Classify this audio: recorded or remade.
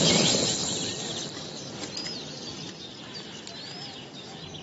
recorded